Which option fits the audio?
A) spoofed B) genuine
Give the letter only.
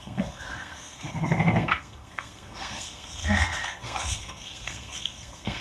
A